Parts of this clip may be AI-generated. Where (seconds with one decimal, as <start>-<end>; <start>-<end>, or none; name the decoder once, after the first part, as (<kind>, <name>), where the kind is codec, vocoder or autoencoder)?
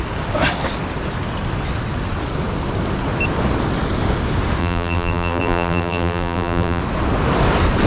4.6-6.8 (vocoder, BigVGAN v2)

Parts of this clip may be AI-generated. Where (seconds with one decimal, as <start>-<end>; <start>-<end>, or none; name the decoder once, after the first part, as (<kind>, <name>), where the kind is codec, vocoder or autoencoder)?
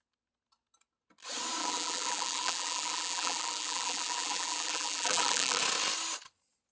1.6-5.6 (vocoder, BigVGAN v2)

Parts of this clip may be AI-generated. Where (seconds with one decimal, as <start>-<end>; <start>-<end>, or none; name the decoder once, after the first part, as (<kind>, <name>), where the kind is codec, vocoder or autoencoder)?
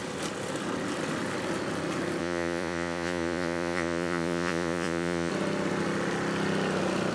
2.2-5.3 (vocoder, Vocos)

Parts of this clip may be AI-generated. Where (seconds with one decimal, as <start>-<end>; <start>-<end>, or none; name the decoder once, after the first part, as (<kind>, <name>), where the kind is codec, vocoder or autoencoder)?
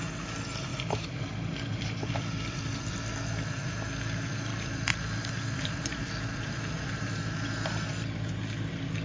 0.7-2.8 (vocoder, BigVGAN v2); 4.5-6.8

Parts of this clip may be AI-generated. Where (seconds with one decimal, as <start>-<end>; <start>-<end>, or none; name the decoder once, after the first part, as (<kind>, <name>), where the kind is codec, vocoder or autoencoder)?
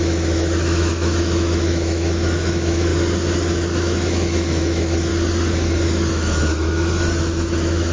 0.0-2.9 (autoencoder, DAC-VAE); 3.8-5.1; 6.1-7.9